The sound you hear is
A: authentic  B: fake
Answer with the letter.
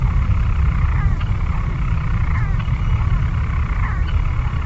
A